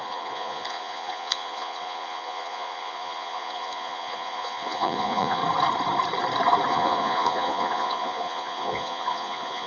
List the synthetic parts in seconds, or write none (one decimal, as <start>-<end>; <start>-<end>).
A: 0.0-5.4; 6.7-9.7